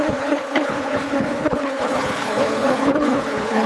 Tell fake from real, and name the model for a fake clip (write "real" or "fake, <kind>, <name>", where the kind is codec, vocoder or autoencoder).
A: fake, codec, HILCodec